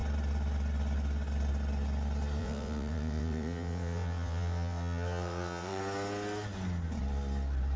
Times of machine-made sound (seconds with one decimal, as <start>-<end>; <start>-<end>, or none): 2.4-5.8